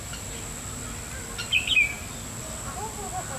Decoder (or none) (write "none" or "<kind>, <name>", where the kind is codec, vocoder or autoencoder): none